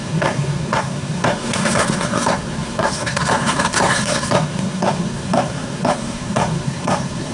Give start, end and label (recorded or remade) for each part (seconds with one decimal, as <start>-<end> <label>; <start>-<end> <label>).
0.0-7.3 remade